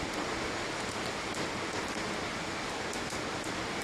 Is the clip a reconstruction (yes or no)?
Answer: no